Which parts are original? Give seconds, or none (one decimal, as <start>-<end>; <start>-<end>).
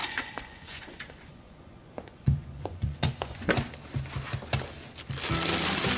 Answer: 3.5-6.0